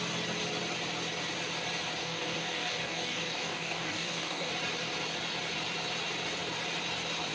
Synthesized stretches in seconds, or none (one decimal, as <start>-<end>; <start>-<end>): 2.0-4.5